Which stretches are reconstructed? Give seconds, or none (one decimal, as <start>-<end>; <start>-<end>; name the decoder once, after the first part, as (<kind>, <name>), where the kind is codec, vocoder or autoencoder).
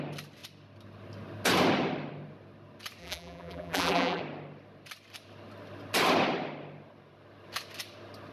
3.0-4.2 (vocoder, BigVGAN v2)